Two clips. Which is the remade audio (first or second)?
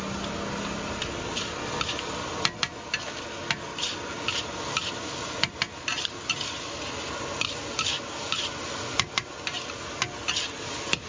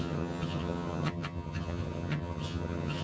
second